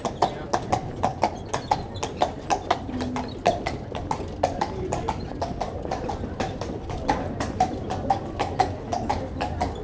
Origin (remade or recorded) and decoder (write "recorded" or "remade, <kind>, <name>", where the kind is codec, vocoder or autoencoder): recorded